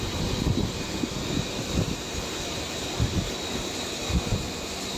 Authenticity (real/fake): real